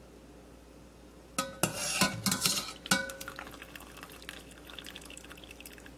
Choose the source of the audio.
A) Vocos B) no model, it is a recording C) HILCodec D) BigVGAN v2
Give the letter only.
B